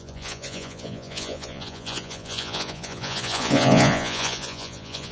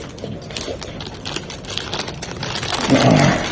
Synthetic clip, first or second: first